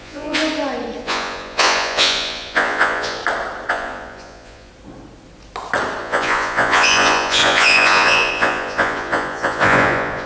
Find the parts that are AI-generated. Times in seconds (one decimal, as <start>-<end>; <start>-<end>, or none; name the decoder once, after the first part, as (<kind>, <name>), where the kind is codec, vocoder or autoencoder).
0.0-0.4 (vocoder, Vocos); 1.0-3.2; 3.7-4.7; 6.0-10.3